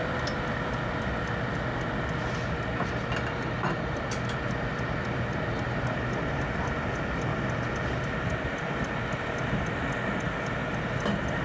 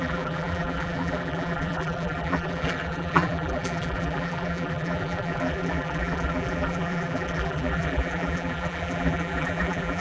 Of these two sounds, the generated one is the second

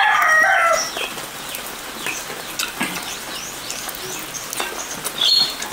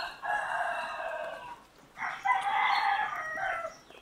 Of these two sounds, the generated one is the second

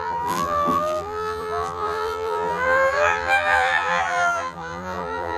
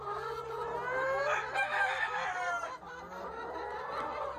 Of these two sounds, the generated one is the first